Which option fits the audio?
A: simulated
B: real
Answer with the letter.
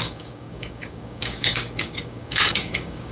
A